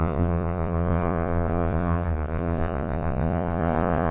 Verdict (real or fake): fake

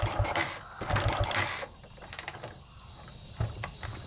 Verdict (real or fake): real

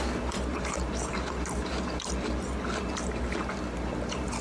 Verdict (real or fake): real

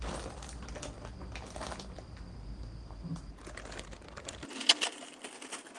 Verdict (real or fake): real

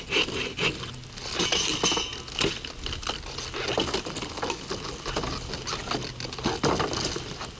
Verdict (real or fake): real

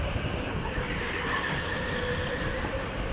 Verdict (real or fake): real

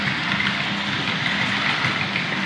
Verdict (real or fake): real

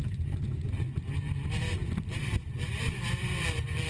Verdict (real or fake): fake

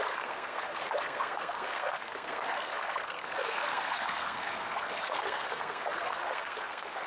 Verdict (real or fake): fake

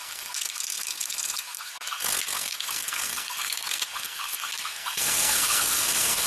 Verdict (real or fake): fake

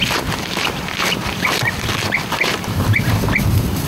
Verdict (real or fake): fake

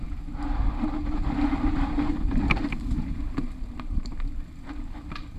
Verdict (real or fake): fake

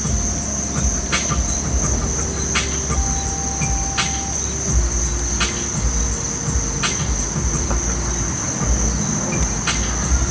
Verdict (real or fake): real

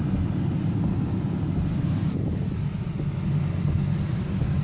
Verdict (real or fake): real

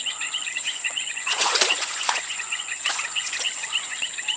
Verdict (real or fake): fake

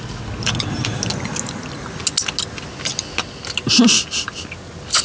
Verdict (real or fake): real